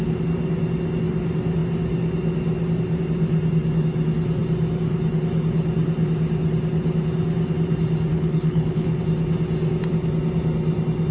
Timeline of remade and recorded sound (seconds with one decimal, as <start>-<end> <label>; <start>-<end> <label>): 0.0-8.1 recorded; 8.1-9.0 remade; 9.0-11.1 recorded